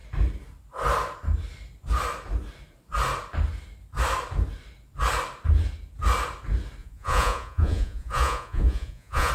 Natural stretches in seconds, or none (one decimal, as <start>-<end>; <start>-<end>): 0.0-6.8